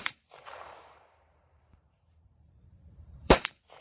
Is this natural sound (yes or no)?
no